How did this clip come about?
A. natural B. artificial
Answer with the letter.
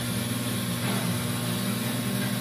A